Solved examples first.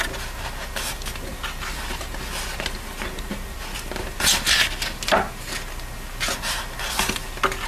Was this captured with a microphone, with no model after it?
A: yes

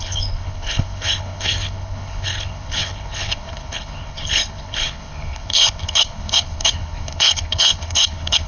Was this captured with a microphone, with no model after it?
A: no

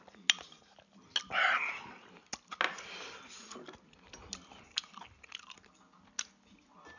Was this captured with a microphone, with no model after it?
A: yes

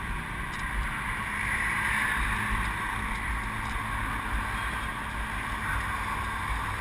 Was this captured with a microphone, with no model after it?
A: yes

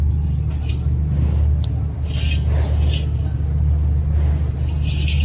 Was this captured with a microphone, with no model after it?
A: yes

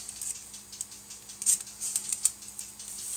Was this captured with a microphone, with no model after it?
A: yes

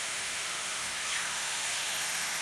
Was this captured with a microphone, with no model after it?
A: no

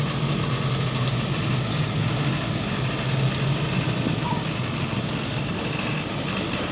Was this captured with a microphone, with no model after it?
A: yes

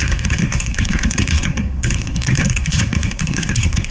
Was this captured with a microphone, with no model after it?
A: no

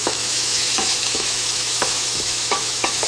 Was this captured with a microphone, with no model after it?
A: no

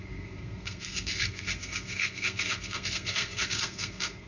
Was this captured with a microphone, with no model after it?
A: no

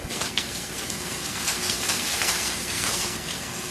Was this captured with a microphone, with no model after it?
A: no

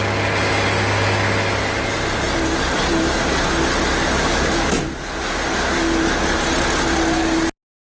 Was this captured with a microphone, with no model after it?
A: yes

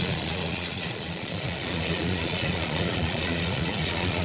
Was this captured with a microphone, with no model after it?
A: no